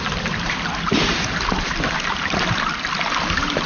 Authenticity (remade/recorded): recorded